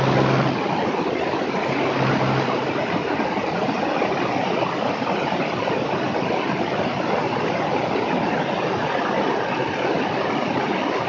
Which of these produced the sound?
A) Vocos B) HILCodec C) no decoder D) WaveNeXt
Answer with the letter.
C